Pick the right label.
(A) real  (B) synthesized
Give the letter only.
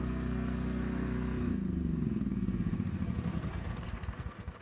B